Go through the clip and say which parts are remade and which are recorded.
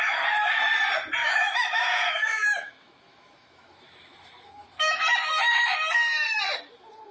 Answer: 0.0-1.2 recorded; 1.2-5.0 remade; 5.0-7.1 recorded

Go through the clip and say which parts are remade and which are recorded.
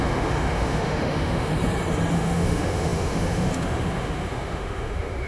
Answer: 0.0-1.5 remade; 1.5-2.1 recorded; 2.1-5.3 remade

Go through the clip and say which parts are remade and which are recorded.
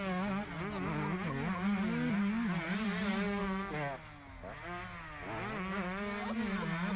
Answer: 0.0-7.0 recorded